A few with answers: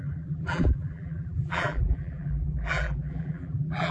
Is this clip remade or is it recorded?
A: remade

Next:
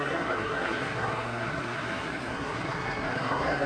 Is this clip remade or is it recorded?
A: remade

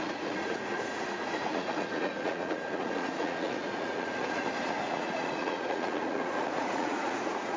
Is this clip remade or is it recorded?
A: remade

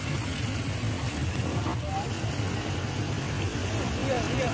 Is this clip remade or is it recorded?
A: recorded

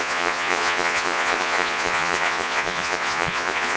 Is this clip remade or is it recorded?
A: remade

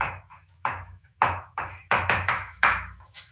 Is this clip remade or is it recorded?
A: remade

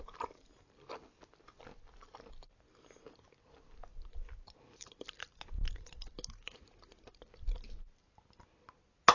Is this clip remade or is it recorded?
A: recorded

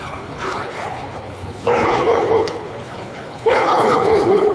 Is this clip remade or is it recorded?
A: remade